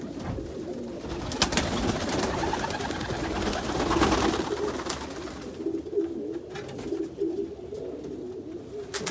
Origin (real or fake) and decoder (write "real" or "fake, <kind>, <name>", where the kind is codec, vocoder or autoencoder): real